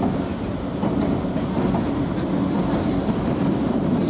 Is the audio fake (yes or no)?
no